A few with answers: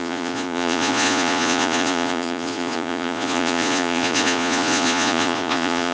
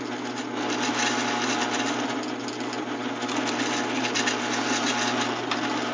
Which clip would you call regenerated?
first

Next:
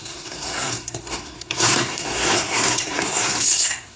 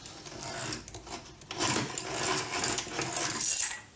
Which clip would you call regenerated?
first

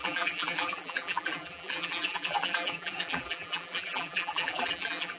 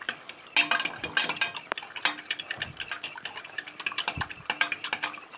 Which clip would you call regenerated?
first